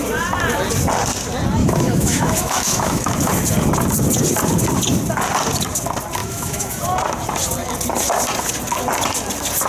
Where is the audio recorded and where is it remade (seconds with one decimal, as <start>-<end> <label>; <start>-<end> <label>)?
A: 0.0-1.6 recorded; 1.6-3.3 remade; 3.3-6.2 recorded; 6.2-6.8 remade; 6.8-9.7 recorded